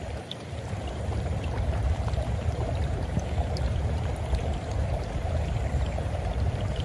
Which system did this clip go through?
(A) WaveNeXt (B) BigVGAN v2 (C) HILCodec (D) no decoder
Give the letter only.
B